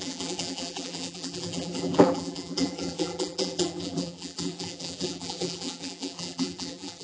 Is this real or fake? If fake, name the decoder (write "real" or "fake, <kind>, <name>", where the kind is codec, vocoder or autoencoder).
fake, vocoder, BigVGAN v2